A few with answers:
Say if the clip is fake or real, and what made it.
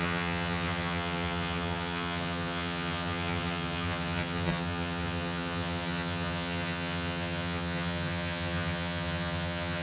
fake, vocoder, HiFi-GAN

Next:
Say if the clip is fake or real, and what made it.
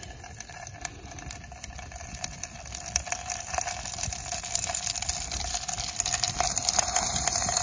real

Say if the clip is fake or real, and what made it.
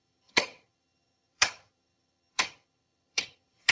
fake, vocoder, HiFi-GAN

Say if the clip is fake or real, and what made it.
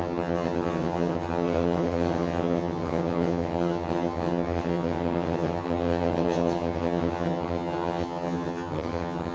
fake, vocoder, HiFi-GAN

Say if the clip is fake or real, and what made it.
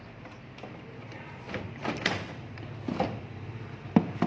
real